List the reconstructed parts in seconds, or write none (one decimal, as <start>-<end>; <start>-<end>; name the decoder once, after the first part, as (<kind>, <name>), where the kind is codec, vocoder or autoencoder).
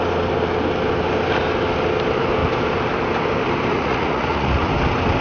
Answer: 3.7-4.7 (vocoder, Vocos)